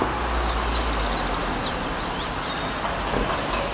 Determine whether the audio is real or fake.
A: real